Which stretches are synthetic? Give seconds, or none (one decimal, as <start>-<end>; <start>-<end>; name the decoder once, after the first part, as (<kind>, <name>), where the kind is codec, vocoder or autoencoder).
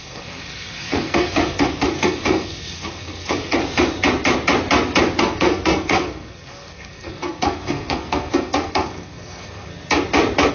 0.0-3.6 (codec, SNAC); 5.2-9.7